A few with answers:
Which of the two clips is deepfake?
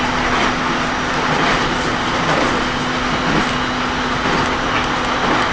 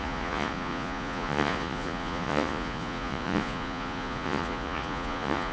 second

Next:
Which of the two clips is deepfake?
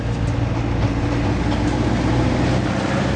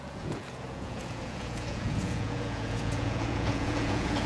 second